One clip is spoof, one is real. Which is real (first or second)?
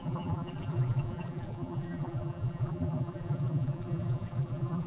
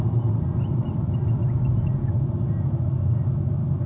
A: second